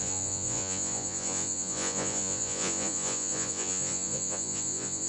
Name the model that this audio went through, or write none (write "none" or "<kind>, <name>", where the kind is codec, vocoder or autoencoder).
vocoder, Vocos